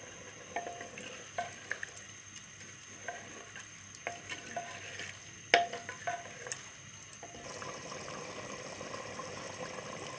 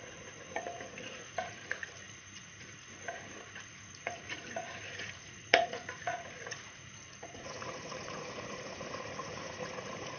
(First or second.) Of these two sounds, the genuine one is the first